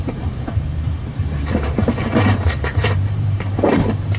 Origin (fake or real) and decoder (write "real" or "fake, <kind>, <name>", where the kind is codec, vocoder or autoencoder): fake, vocoder, BigVGAN v2